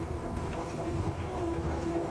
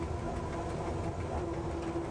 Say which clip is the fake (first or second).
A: first